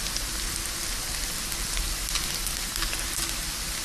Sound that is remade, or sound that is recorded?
recorded